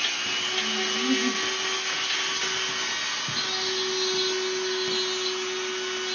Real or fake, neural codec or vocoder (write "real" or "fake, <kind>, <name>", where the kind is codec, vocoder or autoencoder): real